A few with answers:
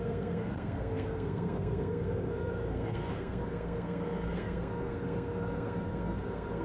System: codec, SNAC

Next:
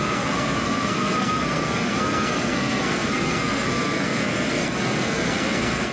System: codec, SNAC